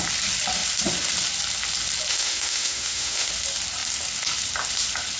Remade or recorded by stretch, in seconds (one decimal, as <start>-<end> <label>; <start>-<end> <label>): 0.0-2.1 recorded; 2.1-3.3 remade; 3.3-5.2 recorded